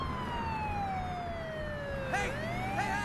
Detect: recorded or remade recorded